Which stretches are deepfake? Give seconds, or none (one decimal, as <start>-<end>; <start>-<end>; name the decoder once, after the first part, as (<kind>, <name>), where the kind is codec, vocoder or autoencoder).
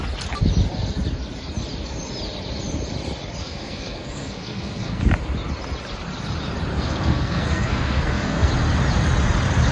3.4-5.0 (codec, SNAC); 6.7-8.5